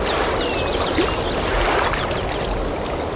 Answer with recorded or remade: recorded